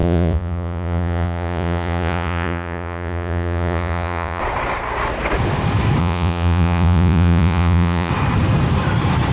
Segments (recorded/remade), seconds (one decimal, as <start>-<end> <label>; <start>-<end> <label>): 0.0-4.4 remade; 4.4-6.0 recorded; 6.0-8.1 remade; 8.1-9.3 recorded